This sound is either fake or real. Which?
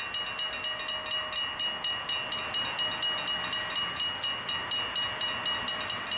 real